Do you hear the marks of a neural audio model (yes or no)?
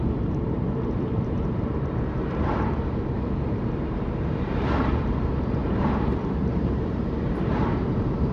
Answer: yes